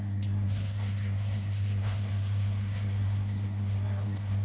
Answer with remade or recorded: remade